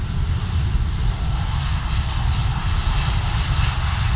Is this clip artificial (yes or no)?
no